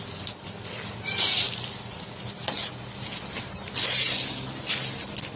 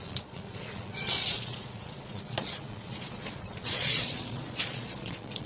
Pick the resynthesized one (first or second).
second